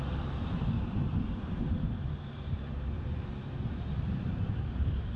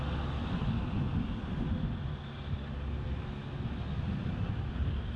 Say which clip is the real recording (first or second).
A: second